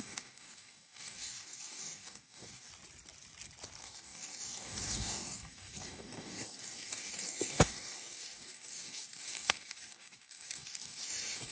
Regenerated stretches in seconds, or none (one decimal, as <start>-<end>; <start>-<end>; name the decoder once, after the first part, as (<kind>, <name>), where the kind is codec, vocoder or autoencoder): 0.0-2.7 (codec, DAC); 3.8-11.5